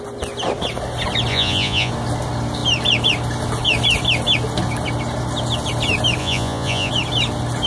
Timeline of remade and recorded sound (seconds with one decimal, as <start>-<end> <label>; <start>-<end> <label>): 0.0-1.3 recorded; 1.3-1.9 remade; 1.9-6.2 recorded; 6.2-6.9 remade; 6.9-7.7 recorded